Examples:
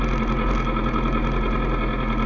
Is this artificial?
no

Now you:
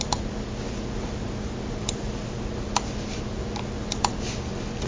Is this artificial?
no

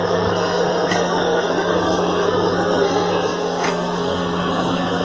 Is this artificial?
yes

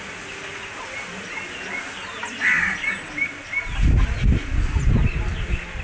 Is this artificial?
no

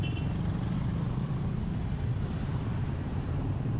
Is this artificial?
no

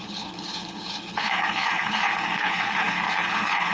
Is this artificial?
yes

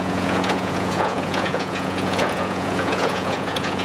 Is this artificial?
yes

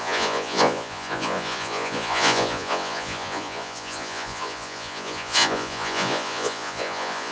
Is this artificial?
yes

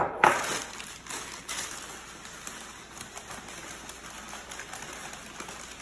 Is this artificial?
no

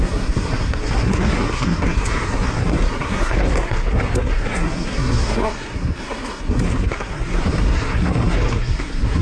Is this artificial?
yes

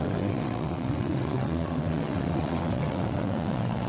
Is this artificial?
yes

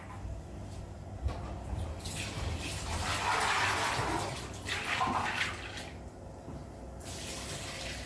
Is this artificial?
no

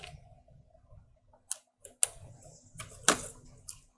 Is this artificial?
no